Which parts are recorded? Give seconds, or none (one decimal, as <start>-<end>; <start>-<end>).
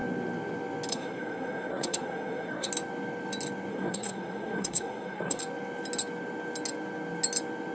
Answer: 0.0-0.9; 2.7-3.7; 5.4-7.7